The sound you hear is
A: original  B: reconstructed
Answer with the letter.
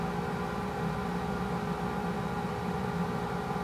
A